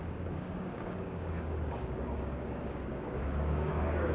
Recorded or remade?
remade